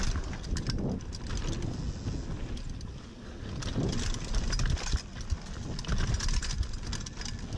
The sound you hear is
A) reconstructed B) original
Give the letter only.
B